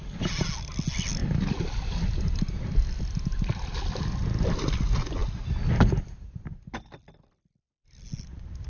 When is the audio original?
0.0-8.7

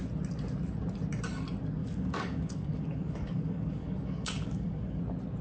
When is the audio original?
0.0-1.8; 5.0-5.4

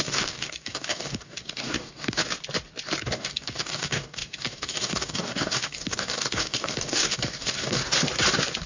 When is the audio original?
2.2-3.0; 7.8-8.7

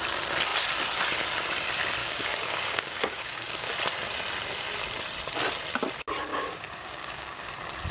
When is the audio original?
0.0-2.0; 3.7-6.3; 7.5-7.9